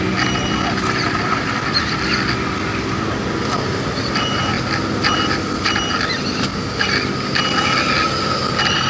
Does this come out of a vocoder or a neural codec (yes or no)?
no